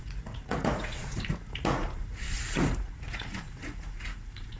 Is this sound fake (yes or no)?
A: yes